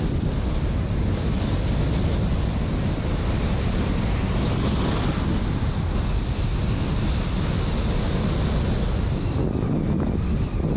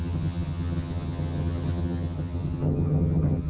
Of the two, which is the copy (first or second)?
second